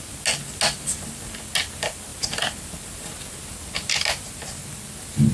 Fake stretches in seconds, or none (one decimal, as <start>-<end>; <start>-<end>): none